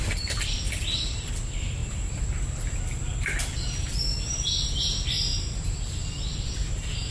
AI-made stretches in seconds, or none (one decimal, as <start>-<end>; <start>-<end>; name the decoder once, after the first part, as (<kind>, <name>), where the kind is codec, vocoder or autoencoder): 0.0-5.3 (vocoder, BigVGAN v2)